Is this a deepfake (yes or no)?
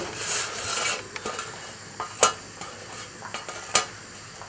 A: no